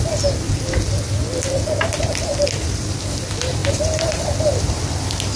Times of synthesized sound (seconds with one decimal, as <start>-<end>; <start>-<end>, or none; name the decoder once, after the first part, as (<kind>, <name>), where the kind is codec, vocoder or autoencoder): 1.2-1.7 (vocoder, BigVGAN v2); 3.6-4.8